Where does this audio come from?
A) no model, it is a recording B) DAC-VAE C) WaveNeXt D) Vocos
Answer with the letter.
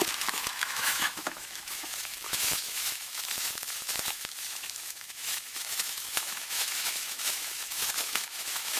B